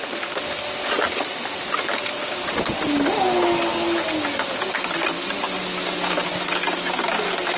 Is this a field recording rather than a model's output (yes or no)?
yes